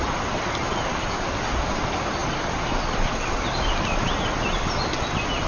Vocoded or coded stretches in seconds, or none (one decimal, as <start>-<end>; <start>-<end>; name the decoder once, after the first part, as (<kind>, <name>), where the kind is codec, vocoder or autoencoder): none